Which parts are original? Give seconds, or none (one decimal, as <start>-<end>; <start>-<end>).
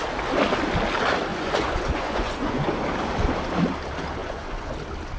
0.0-1.3; 2.7-4.2; 4.7-5.2